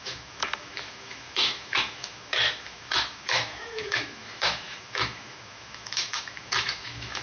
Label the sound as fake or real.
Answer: fake